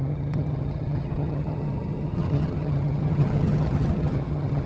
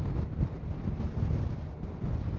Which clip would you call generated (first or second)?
first